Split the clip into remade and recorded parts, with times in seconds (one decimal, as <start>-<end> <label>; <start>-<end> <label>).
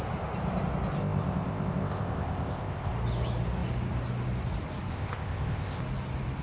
0.0-1.0 recorded; 1.0-2.9 remade; 2.9-4.9 recorded; 4.9-5.8 remade; 5.8-6.4 recorded